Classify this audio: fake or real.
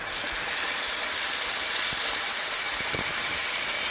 real